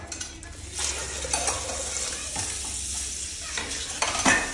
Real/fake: real